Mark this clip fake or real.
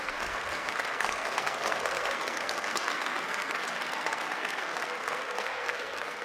fake